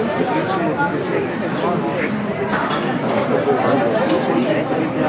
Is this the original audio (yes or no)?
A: yes